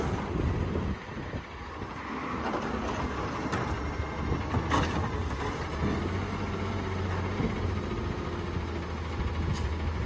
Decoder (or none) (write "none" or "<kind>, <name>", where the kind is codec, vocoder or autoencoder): none